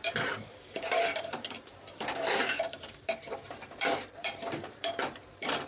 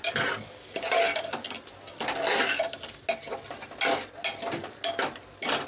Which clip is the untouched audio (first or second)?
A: second